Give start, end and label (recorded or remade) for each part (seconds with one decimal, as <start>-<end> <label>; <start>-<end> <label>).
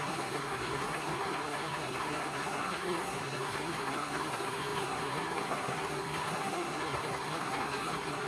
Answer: 0.0-8.3 remade